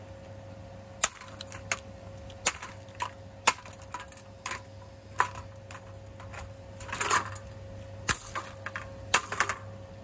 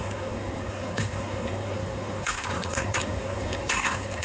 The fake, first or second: second